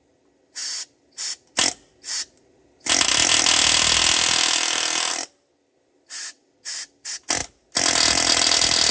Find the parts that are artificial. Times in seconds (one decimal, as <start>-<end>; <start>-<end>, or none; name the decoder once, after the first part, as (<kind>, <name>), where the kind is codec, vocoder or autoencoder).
none